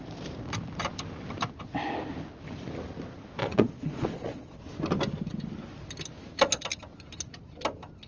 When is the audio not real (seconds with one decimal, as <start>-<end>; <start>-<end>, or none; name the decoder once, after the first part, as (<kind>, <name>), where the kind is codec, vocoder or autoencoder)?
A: 3.4-4.6 (vocoder, Vocos)